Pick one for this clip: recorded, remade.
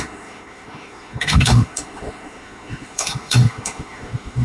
remade